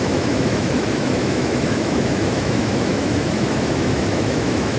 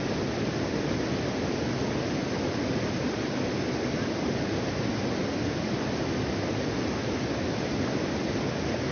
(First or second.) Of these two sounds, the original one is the second